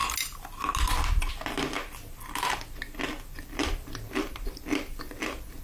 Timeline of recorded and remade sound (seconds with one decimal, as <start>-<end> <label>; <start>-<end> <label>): 0.0-3.4 recorded; 3.4-5.6 remade

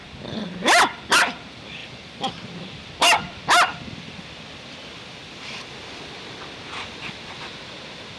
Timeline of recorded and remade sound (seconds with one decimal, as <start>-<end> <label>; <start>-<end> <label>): 0.0-1.8 recorded; 1.8-2.9 remade; 2.9-3.7 recorded; 3.7-6.0 remade; 6.0-8.2 recorded

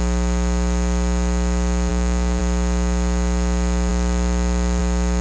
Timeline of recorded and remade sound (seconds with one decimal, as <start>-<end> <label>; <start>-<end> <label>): 0.0-1.9 recorded; 1.9-2.4 remade; 2.4-5.2 recorded